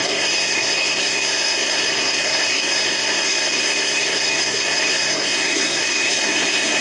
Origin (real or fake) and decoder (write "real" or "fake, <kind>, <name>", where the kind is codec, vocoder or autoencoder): fake, codec, SNAC